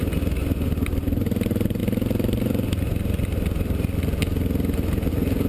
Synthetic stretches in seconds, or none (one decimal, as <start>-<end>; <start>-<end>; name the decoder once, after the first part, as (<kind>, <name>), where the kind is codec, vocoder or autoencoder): none